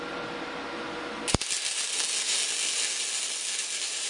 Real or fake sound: real